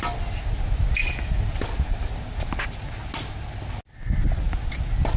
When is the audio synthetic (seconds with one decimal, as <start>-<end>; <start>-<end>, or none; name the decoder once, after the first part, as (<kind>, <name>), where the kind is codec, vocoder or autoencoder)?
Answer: none